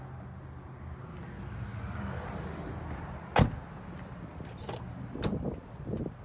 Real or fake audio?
real